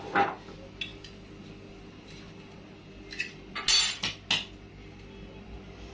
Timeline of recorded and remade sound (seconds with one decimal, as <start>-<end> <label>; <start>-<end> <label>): 0.0-5.9 recorded